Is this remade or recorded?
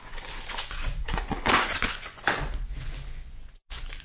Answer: remade